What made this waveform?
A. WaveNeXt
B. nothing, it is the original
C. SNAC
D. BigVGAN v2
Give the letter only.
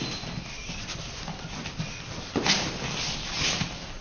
B